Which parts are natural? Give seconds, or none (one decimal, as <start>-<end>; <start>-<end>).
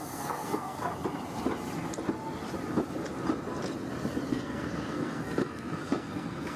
0.9-4.3